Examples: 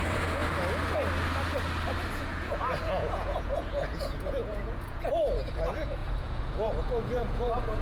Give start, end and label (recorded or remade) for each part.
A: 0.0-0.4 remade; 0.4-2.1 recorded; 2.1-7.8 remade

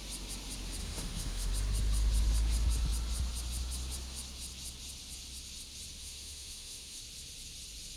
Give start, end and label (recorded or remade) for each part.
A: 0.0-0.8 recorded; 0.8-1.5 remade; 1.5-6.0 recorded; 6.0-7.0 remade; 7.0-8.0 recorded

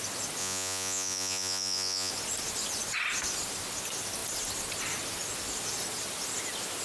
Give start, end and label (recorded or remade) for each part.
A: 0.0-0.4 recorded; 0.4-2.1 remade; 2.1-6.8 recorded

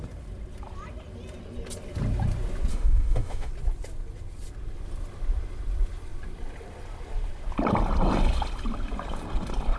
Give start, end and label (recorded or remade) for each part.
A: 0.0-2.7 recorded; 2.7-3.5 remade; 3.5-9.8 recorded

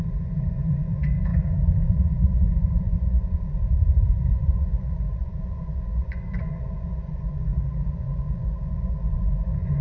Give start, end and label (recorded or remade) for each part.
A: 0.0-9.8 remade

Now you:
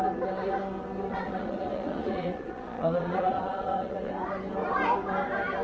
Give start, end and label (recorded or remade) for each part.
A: 0.0-1.1 recorded; 1.1-4.1 remade; 4.1-5.6 recorded

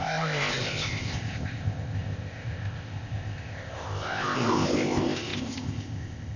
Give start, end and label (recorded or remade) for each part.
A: 0.0-6.4 remade

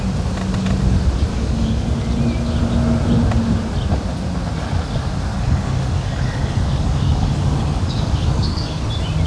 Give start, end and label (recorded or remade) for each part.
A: 0.0-1.3 recorded; 1.3-1.9 remade; 1.9-5.3 recorded; 5.3-8.8 remade; 8.8-9.3 recorded